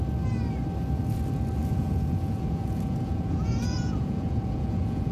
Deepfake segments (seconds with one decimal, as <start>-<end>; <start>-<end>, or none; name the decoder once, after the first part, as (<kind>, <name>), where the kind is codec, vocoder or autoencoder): 1.6-5.1 (vocoder, Vocos)